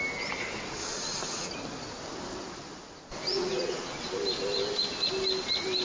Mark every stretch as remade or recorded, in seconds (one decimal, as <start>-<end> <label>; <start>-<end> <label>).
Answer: 0.0-0.9 recorded; 0.9-1.5 remade; 1.5-3.3 recorded; 3.3-4.0 remade; 4.0-5.8 recorded